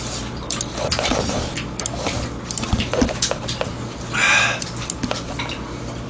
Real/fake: real